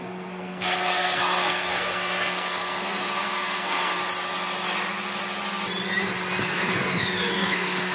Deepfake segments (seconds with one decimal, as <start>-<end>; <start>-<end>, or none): 0.0-4.0; 6.4-7.9